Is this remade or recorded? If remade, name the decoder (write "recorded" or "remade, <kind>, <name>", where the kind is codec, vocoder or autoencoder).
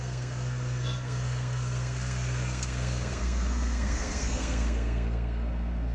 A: remade, codec, SNAC